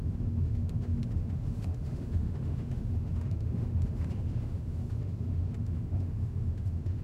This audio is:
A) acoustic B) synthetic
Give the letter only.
B